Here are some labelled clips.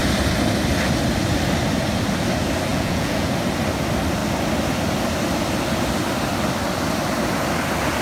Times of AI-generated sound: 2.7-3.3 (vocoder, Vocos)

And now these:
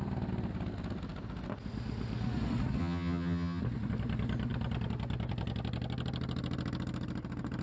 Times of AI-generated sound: 2.8-3.6 (vocoder, HiFi-GAN)

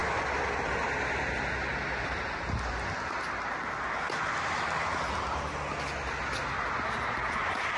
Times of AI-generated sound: none

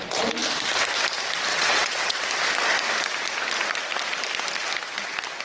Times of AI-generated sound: 1.5-2.2 (vocoder, WaveNeXt)